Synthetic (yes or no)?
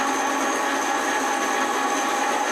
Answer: no